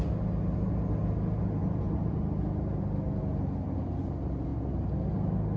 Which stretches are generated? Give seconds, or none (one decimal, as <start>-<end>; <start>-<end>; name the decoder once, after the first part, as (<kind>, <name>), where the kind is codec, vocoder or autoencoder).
1.6-2.2 (vocoder, BigVGAN v2)